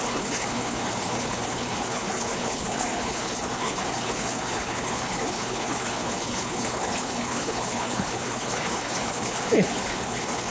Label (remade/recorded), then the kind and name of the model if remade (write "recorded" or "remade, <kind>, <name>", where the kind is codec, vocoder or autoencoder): remade, codec, HILCodec